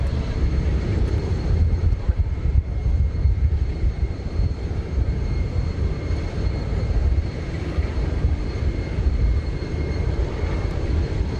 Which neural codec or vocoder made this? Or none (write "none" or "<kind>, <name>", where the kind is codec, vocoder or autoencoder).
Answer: vocoder, BigVGAN v2